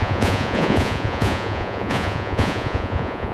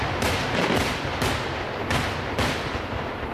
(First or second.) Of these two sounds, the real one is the second